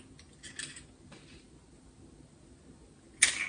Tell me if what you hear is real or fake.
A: real